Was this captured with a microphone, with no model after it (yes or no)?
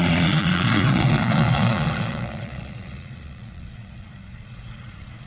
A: no